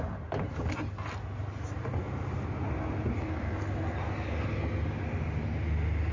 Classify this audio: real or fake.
real